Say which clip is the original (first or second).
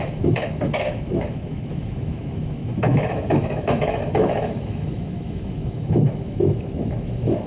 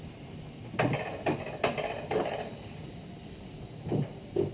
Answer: second